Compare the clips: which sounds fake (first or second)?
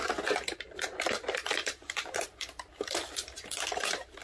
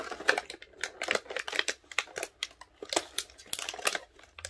first